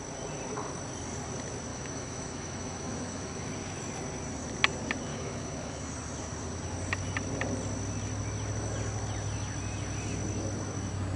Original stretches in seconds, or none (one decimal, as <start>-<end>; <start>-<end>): 0.0-1.7; 3.5-5.1; 5.9-11.2